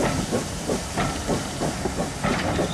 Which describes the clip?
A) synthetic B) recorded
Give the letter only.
B